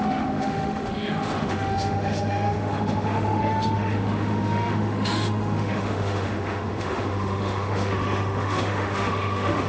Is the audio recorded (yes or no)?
no